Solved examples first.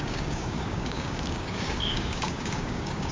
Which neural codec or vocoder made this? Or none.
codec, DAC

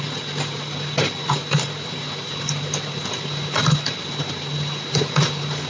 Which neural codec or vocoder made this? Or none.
none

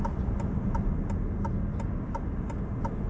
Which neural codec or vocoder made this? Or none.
none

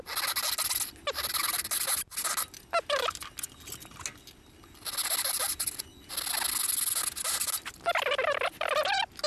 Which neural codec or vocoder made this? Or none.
none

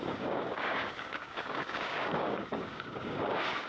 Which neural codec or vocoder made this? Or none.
codec, DAC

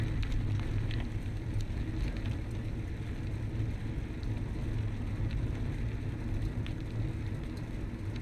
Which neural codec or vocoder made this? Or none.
none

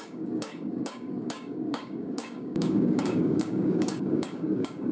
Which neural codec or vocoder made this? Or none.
codec, DAC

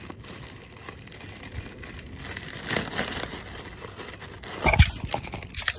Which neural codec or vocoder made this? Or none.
none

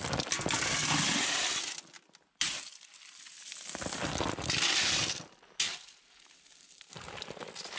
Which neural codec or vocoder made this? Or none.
none